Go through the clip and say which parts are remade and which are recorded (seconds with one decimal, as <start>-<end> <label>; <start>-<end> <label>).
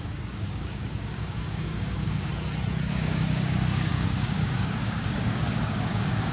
0.0-2.3 remade; 2.3-2.9 recorded; 2.9-6.3 remade